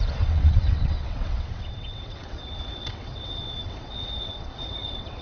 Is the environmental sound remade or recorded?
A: remade